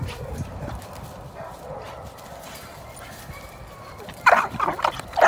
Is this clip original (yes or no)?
no